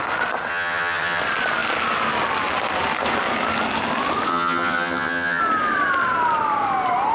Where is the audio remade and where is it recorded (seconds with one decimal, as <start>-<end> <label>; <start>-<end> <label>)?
0.0-0.5 recorded; 0.5-1.2 remade; 1.2-4.3 recorded; 4.3-5.4 remade; 5.4-7.1 recorded